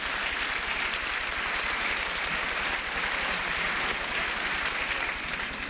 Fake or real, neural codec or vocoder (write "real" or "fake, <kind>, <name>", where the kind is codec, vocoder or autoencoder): real